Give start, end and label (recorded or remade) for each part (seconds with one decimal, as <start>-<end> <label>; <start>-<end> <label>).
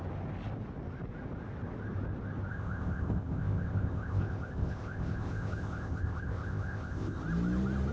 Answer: 0.0-2.5 recorded; 2.5-7.2 remade; 7.2-7.9 recorded